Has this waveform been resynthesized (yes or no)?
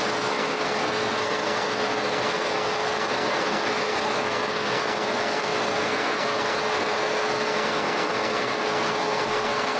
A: yes